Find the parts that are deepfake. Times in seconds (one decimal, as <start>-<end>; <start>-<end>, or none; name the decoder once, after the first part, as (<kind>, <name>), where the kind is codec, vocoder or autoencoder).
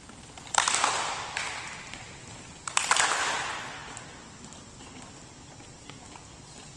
0.0-3.8 (vocoder, BigVGAN v2)